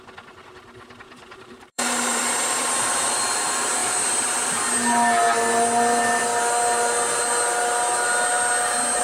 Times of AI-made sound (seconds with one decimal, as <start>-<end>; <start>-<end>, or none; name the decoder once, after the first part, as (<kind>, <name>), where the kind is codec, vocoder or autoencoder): 1.1-2.2 (vocoder, BigVGAN v2); 3.8-4.6